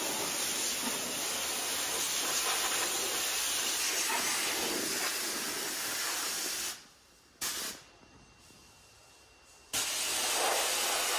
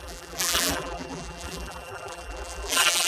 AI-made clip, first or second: second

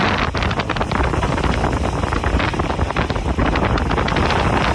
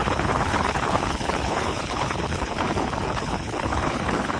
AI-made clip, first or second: second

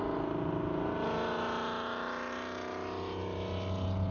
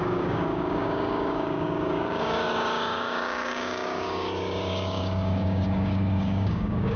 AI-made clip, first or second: second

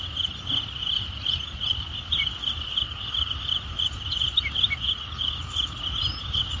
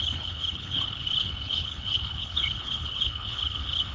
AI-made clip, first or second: second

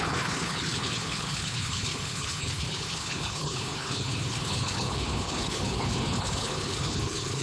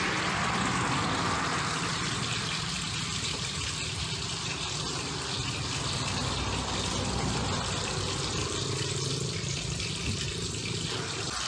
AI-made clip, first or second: first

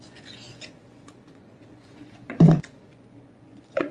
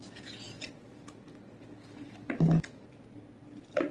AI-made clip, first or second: first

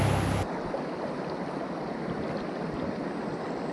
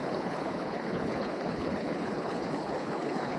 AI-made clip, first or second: second